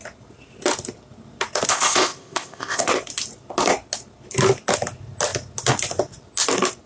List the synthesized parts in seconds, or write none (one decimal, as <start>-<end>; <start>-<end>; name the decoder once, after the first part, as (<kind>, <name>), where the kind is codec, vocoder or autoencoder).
1.7-2.9 (codec, ZipCodec)